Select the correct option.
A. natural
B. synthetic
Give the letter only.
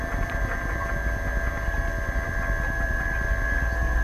A